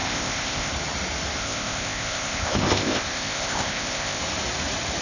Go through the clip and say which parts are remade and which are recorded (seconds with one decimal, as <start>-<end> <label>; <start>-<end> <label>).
0.0-0.7 remade; 0.7-1.4 recorded; 1.4-4.2 remade; 4.2-5.0 recorded